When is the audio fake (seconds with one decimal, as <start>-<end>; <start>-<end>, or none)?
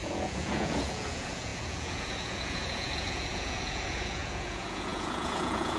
0.0-5.8